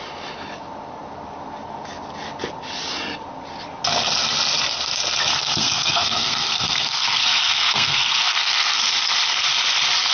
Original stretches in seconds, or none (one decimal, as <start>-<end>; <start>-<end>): 0.0-5.3; 8.8-10.1